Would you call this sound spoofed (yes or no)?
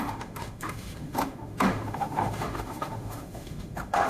yes